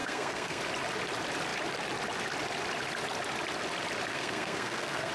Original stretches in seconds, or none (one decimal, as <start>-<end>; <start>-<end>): 0.6-4.1